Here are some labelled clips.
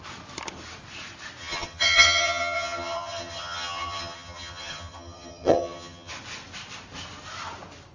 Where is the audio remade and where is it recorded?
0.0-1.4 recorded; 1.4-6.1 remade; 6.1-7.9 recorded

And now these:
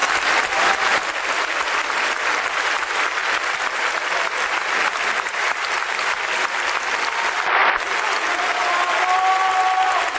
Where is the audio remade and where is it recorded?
0.0-10.2 recorded

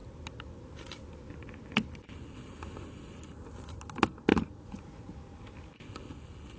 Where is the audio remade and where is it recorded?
0.0-6.6 recorded

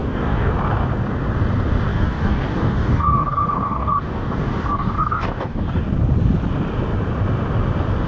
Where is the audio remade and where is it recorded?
0.0-0.5 remade; 0.5-1.9 recorded; 1.9-5.8 remade; 5.8-8.1 recorded

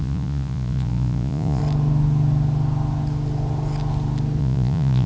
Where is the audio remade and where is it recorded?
0.0-1.6 remade; 1.6-4.4 recorded; 4.4-5.1 remade

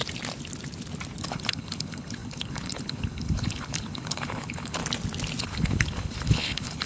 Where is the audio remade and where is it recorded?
0.0-1.2 recorded; 1.2-4.8 remade; 4.8-5.4 recorded; 5.4-6.9 remade

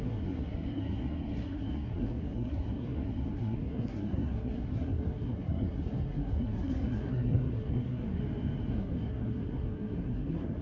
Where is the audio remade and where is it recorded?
0.0-8.2 remade; 8.2-8.7 recorded; 8.7-10.6 remade

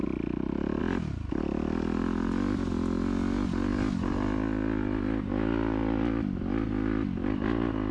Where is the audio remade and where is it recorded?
0.0-7.9 recorded